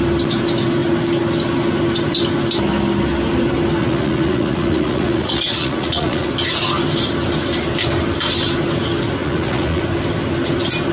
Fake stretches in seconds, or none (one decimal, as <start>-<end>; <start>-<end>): 3.8-6.3; 9.2-9.8